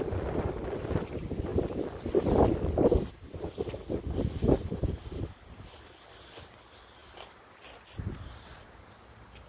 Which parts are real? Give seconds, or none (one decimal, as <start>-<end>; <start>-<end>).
0.0-9.5